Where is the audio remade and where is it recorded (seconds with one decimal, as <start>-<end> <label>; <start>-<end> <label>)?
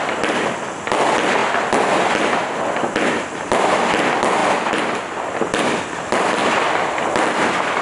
0.0-7.8 recorded